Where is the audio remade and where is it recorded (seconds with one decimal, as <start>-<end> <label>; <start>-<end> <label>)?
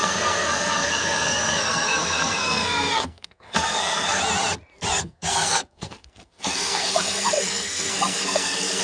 0.0-4.2 remade; 4.2-5.0 recorded; 5.0-8.8 remade